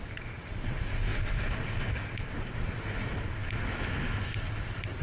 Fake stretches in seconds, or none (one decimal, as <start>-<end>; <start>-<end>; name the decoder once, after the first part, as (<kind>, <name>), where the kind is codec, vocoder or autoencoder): none